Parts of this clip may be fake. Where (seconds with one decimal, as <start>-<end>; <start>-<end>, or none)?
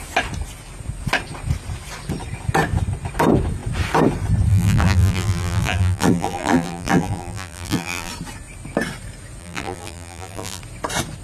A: 4.5-8.1; 9.4-10.6